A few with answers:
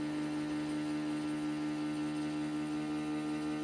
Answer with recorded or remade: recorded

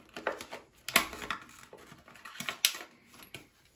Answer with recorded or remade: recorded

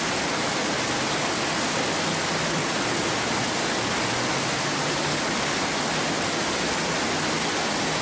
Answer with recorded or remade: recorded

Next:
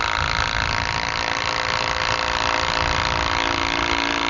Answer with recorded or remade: recorded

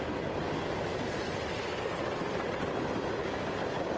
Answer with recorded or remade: recorded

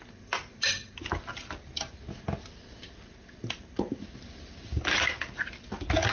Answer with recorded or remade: recorded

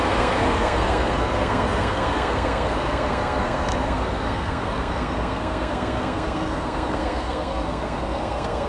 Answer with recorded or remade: remade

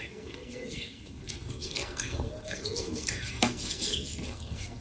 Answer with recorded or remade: remade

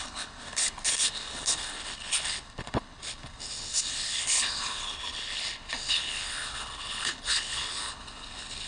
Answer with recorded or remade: remade